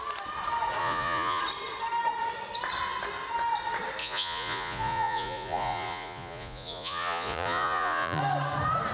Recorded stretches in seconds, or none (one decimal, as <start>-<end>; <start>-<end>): 0.0-0.8; 1.4-4.0; 8.2-8.9